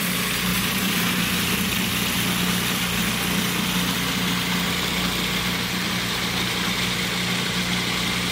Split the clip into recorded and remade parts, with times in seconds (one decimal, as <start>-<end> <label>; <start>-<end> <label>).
0.0-0.5 recorded; 0.5-1.7 remade; 1.7-8.3 recorded

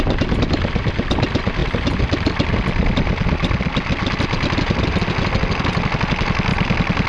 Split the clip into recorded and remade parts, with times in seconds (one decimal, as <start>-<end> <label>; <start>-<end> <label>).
0.0-6.5 recorded; 6.5-7.1 remade

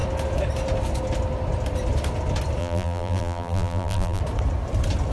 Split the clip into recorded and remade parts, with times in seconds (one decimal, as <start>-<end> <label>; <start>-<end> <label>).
0.0-2.6 recorded; 2.6-4.2 remade; 4.2-5.1 recorded

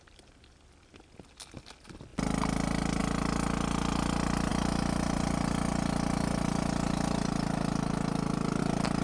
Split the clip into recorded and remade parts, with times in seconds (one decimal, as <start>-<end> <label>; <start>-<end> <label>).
0.0-9.0 recorded

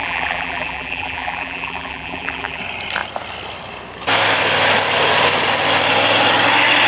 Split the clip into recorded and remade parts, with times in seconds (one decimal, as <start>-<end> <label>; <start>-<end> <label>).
0.0-2.6 remade; 2.6-6.9 recorded